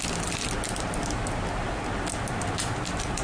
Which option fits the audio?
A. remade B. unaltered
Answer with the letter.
B